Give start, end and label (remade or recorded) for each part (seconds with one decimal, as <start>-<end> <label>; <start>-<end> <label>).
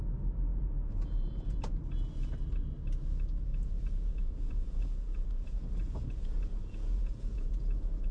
0.0-0.5 recorded; 0.5-1.8 remade; 1.8-3.5 recorded; 3.5-8.1 remade